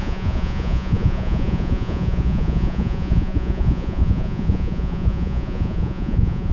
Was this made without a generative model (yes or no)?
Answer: no